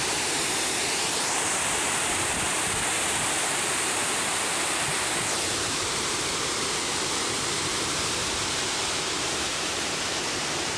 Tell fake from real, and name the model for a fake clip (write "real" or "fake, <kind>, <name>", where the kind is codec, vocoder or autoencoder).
fake, vocoder, BigVGAN v2